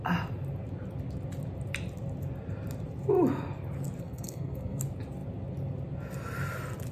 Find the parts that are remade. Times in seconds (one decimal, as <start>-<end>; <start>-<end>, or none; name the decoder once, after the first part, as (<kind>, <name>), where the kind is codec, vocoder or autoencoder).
4.0-4.8 (codec, SNAC)